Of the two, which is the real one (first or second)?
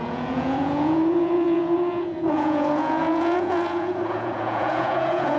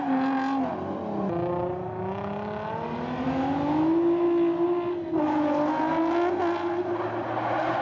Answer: second